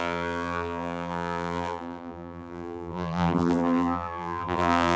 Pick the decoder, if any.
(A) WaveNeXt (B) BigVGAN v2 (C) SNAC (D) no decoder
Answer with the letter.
B